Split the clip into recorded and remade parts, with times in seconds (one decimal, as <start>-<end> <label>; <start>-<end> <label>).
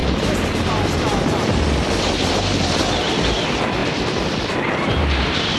0.0-5.6 recorded